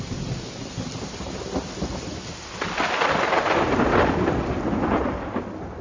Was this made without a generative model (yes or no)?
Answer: yes